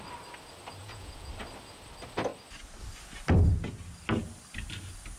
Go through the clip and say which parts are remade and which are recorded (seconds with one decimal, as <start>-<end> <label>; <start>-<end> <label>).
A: 0.0-0.8 recorded; 0.8-1.3 remade; 1.3-5.2 recorded